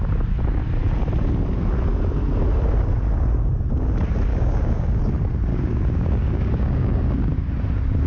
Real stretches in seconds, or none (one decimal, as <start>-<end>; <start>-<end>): 0.0-4.3; 5.0-5.5; 7.5-8.1